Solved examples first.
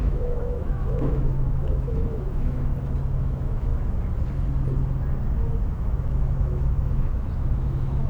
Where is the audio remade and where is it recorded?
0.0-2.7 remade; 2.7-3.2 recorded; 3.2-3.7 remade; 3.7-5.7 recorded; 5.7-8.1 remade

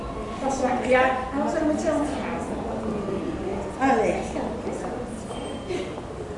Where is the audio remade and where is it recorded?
0.0-6.4 recorded

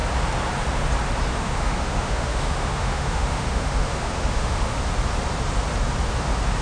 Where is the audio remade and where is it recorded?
0.0-1.3 recorded; 1.3-4.8 remade; 4.8-6.6 recorded

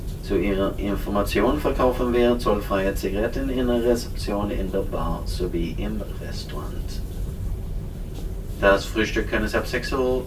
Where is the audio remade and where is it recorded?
0.0-10.3 recorded

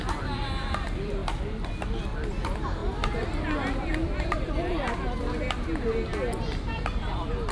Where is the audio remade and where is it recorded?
0.0-7.5 recorded

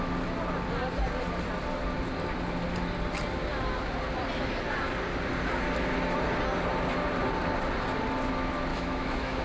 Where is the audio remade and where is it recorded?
0.0-8.7 recorded; 8.7-9.4 remade

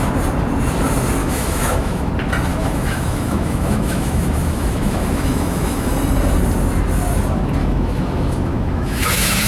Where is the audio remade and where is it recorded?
0.0-1.2 recorded; 1.2-2.1 remade; 2.1-2.5 recorded; 2.5-5.9 remade; 5.9-7.6 recorded; 7.6-9.5 remade